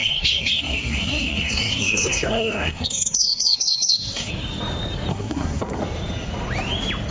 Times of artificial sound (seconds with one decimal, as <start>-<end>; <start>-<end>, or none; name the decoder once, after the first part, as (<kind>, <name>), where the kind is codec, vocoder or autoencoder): 0.0-4.3 (codec, SNAC); 5.1-5.8